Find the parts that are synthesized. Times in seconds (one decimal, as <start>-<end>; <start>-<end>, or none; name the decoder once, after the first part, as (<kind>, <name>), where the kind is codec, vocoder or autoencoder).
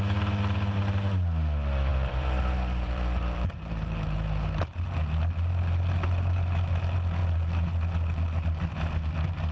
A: 1.9-4.6 (vocoder, BigVGAN v2)